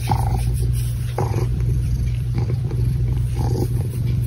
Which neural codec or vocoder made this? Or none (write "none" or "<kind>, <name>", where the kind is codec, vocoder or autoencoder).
vocoder, BigVGAN v2